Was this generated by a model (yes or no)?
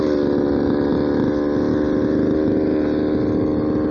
no